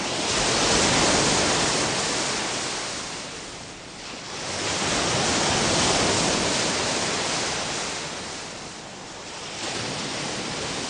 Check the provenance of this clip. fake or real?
real